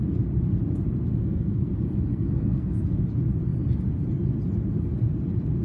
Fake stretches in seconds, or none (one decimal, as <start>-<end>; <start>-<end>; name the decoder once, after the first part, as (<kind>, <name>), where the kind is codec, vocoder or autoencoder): 1.2-1.7 (codec, SNAC); 2.1-3.0